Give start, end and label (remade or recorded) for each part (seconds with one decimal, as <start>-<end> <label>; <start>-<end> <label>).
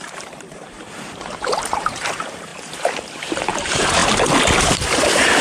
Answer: 0.0-4.0 remade; 4.0-4.6 recorded; 4.6-5.4 remade